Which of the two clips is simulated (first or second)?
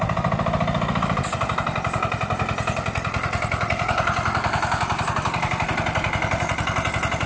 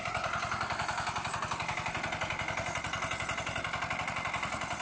first